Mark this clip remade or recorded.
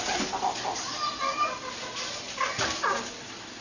recorded